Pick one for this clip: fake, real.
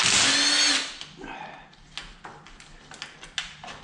real